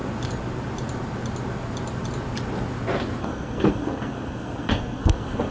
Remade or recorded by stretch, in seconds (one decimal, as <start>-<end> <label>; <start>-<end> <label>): 0.0-3.2 recorded; 3.2-5.5 remade